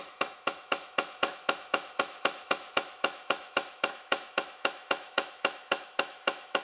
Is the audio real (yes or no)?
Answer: no